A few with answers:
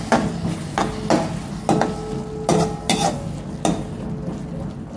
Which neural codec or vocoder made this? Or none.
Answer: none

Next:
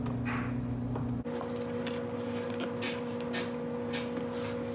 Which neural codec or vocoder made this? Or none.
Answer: none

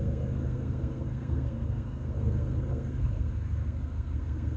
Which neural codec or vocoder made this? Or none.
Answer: codec, SNAC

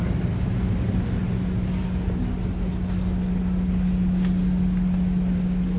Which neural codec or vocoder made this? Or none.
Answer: none